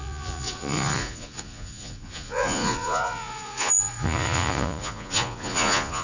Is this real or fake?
fake